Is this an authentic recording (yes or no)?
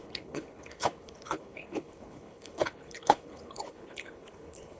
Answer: no